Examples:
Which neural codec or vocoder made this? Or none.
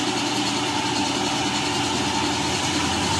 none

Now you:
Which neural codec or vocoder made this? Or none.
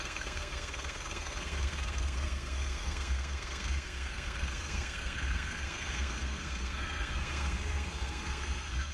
codec, SNAC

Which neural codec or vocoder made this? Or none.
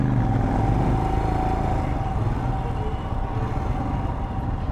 none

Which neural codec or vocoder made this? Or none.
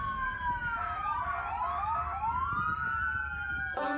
vocoder, BigVGAN v2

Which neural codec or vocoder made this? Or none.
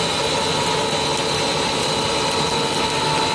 none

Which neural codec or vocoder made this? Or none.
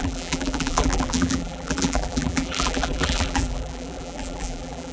vocoder, BigVGAN v2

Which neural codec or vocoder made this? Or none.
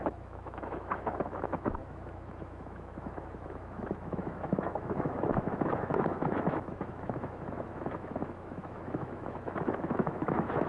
autoencoder, DAC-VAE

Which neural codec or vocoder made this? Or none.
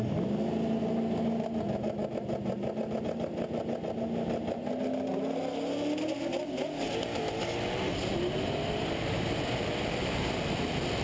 none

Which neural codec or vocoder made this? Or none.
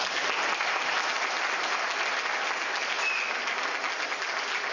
none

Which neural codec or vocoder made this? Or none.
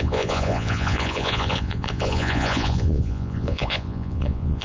vocoder, Vocos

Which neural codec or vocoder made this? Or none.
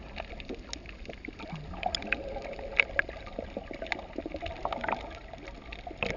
none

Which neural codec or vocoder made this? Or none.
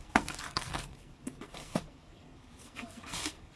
codec, SNAC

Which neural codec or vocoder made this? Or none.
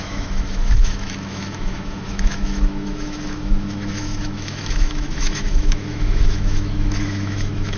autoencoder, DAC-VAE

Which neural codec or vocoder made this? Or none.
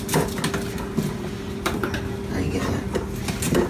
none